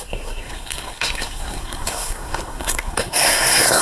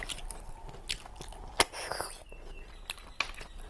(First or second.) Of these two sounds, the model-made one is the first